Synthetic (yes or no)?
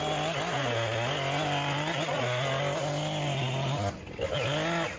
no